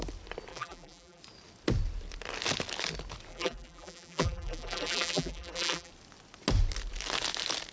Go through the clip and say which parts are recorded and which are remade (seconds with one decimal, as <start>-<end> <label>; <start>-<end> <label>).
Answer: 0.0-0.5 recorded; 0.5-1.2 remade; 1.2-3.3 recorded; 3.3-5.9 remade; 5.9-7.7 recorded